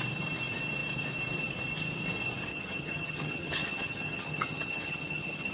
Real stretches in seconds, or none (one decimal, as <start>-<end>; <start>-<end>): 0.0-2.5